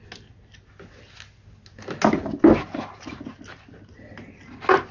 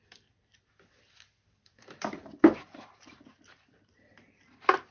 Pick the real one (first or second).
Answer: first